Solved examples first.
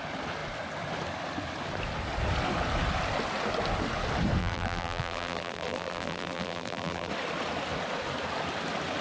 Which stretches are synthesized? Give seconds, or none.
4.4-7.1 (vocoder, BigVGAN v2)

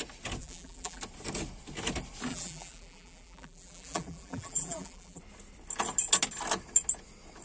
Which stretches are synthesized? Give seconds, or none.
0.4-1.0 (vocoder, BigVGAN v2); 2.3-5.2